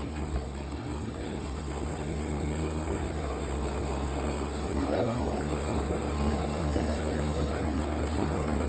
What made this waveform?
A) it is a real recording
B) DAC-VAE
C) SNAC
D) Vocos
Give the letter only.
C